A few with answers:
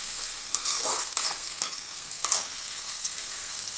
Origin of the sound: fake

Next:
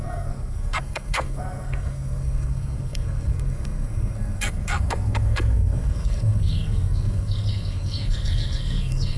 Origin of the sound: fake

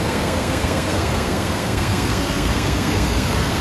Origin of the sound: fake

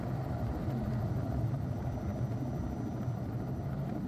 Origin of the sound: real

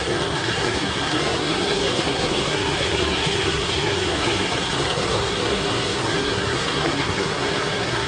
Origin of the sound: fake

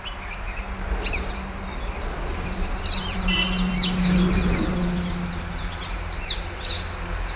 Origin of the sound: real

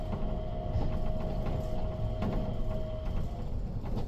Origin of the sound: real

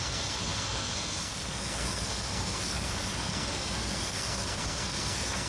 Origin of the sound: fake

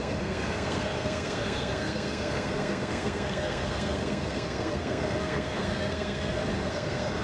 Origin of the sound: fake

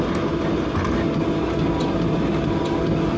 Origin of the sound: real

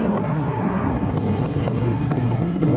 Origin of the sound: fake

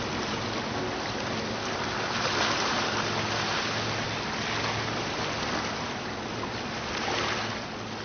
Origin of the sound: real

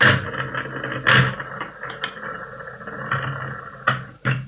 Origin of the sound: real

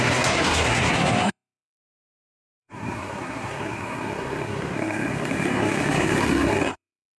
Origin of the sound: fake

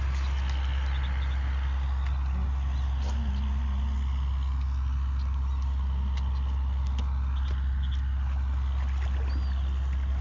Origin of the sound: real